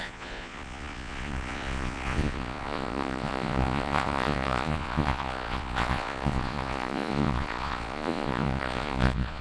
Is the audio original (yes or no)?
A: no